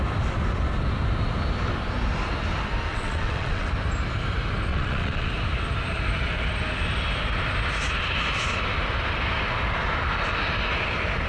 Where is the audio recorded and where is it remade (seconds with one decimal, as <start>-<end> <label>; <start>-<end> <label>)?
0.0-2.9 recorded; 2.9-3.7 remade; 3.7-4.7 recorded; 4.7-5.3 remade; 5.3-11.3 recorded

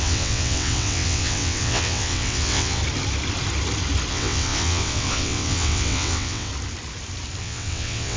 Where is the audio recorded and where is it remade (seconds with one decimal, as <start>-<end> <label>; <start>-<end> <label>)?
0.0-2.8 remade; 2.8-4.1 recorded; 4.1-6.5 remade; 6.5-7.4 recorded; 7.4-8.2 remade

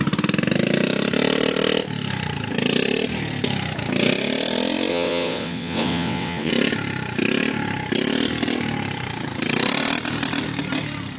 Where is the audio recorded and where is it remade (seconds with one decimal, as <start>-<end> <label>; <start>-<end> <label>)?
0.0-4.9 recorded; 4.9-6.5 remade; 6.5-11.2 recorded